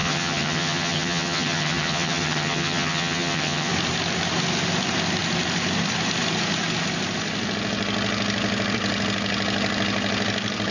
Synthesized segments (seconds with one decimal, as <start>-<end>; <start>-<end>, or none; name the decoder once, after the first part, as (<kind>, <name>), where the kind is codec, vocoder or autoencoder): 0.0-3.7 (vocoder, HiFi-GAN)